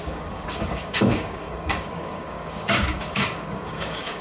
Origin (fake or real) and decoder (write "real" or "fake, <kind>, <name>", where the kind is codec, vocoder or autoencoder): fake, codec, DAC